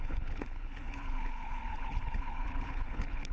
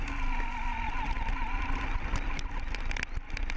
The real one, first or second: second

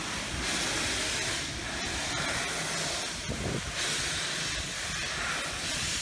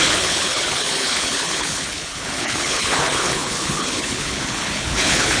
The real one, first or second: first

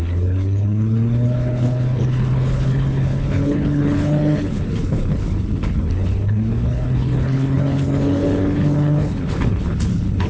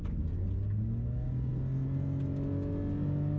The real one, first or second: second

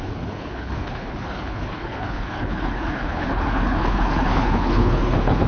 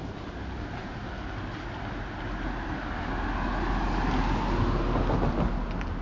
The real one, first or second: second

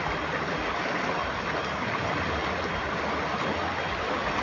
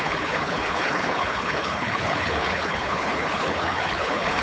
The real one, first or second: first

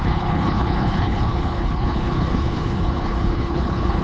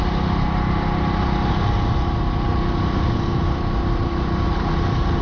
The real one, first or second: second